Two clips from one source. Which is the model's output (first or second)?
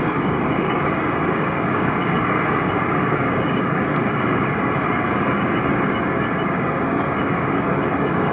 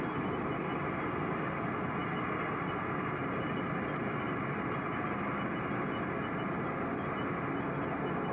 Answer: first